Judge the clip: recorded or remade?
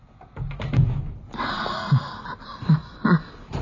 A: recorded